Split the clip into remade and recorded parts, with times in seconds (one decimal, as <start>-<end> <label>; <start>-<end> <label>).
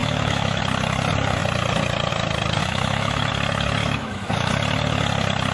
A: 0.0-0.6 remade; 0.6-2.6 recorded; 2.6-3.3 remade; 3.3-3.8 recorded; 3.8-4.5 remade; 4.5-5.5 recorded